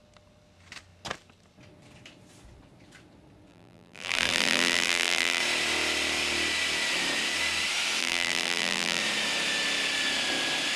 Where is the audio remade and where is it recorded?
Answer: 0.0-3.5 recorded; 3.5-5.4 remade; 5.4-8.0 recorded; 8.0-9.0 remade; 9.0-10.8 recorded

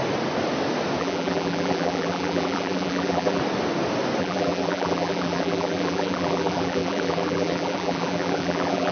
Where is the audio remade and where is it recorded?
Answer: 0.0-1.0 recorded; 1.0-3.4 remade; 3.4-4.2 recorded; 4.2-8.9 remade

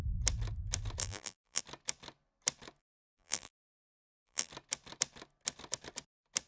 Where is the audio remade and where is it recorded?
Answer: 0.0-1.0 recorded; 1.0-1.6 remade; 1.6-2.8 recorded; 2.8-4.5 remade; 4.5-6.5 recorded

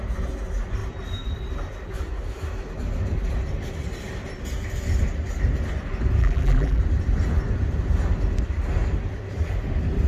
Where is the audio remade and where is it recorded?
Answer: 0.0-6.2 recorded; 6.2-6.8 remade; 6.8-10.1 recorded

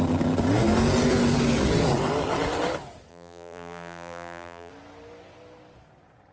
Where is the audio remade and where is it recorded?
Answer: 0.0-3.1 recorded; 3.1-4.7 remade; 4.7-6.3 recorded

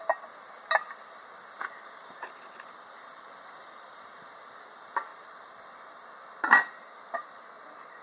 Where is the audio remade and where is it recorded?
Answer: 0.0-3.1 recorded; 3.1-3.6 remade; 3.6-5.1 recorded; 5.1-6.7 remade; 6.7-8.0 recorded

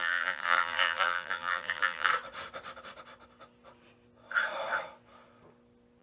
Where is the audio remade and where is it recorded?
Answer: 0.0-2.1 remade; 2.1-6.0 recorded